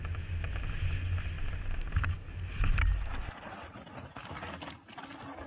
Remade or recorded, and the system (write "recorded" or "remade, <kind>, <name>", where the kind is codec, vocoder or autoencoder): recorded